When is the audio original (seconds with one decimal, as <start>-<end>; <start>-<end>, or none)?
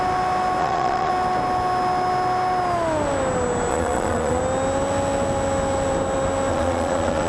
0.0-0.6; 1.1-3.7; 4.4-6.5